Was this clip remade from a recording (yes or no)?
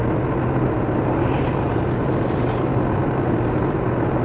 no